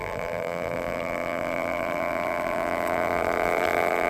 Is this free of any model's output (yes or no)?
no